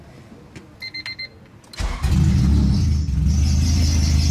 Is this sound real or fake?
real